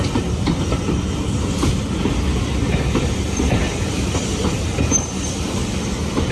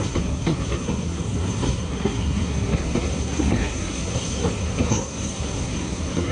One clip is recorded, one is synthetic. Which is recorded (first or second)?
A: first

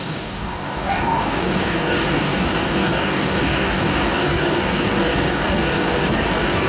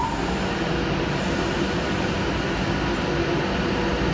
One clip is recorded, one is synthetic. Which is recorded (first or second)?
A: second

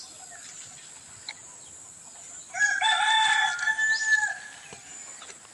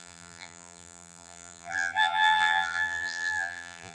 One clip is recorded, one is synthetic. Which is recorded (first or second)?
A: first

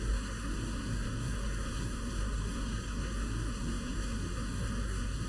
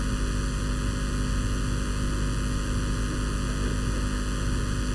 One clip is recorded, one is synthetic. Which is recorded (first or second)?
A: second